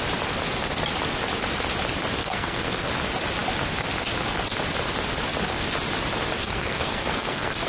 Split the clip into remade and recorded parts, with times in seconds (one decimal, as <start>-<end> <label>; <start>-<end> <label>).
0.0-2.2 recorded; 2.2-2.9 remade; 2.9-6.4 recorded; 6.4-7.7 remade